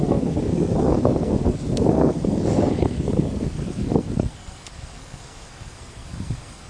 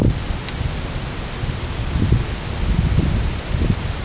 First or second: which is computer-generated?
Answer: first